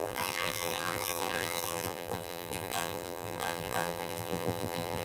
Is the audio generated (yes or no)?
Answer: yes